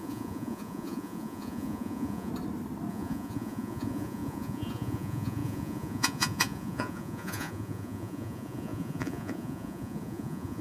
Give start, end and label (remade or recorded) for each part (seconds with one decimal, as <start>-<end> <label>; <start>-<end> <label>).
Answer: 0.0-2.3 remade; 2.3-2.9 recorded; 2.9-10.6 remade